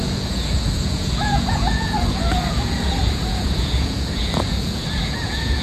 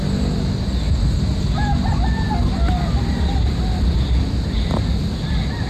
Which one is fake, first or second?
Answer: first